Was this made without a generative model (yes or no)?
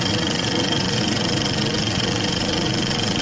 no